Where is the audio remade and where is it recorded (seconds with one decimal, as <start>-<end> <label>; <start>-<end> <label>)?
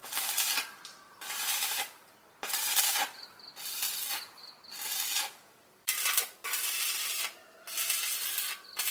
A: 0.0-4.4 remade; 4.4-5.5 recorded; 5.5-7.4 remade; 7.4-8.9 recorded